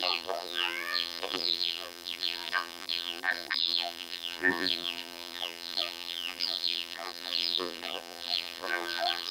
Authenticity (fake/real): fake